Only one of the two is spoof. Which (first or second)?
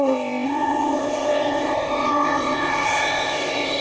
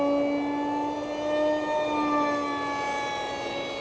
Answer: first